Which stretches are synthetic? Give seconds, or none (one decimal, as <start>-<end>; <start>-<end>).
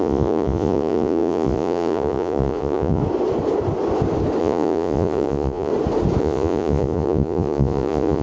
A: 0.0-3.0; 4.4-5.7; 6.2-8.2